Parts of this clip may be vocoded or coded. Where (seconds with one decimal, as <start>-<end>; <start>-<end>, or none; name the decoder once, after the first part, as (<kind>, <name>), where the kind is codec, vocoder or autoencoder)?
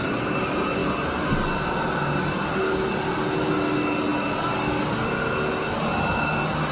none